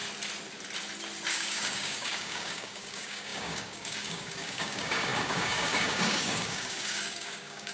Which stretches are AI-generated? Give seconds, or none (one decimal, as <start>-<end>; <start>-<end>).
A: 1.3-7.7